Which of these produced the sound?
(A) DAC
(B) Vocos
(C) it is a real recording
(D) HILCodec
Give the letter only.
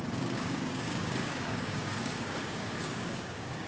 A